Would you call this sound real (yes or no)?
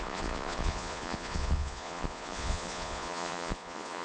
no